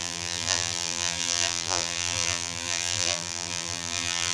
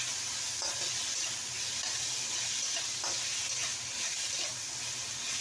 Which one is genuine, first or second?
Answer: second